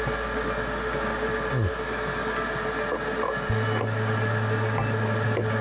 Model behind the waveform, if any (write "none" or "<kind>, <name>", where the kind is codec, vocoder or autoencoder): none